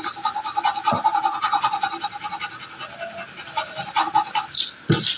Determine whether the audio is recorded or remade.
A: recorded